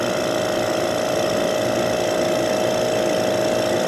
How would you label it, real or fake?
real